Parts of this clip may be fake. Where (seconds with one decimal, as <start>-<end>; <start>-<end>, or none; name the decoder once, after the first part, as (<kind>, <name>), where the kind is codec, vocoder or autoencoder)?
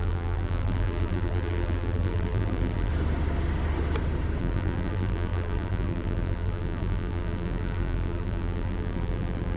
0.0-2.9 (vocoder, BigVGAN v2); 4.4-9.6